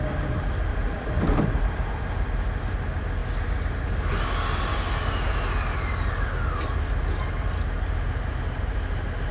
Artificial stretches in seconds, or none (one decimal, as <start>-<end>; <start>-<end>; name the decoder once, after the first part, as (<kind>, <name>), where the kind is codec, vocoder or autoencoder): 0.7-1.9 (vocoder, BigVGAN v2)